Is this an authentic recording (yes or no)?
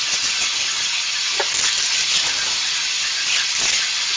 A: yes